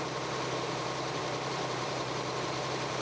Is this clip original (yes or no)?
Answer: no